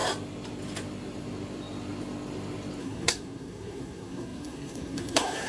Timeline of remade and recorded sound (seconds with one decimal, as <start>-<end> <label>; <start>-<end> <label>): 0.0-2.8 recorded; 2.8-5.5 remade